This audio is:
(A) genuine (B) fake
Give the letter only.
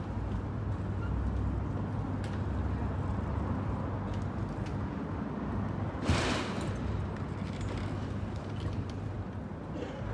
A